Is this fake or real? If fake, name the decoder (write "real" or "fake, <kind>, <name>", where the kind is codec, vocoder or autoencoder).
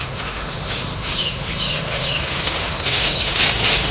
fake, autoencoder, DAC-VAE